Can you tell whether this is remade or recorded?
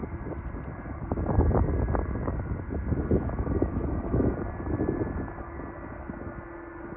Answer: recorded